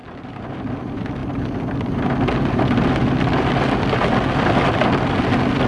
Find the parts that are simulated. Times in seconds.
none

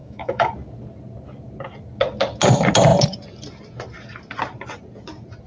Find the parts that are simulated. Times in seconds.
0.0-0.5 (autoencoder, DAC-VAE)

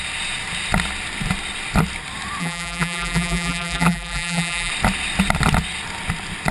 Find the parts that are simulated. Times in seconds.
2.4-4.7 (vocoder, BigVGAN v2)

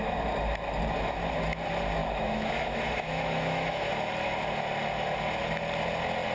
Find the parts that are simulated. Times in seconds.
2.0-3.9 (autoencoder, DAC-VAE)